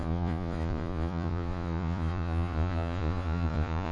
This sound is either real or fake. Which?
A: fake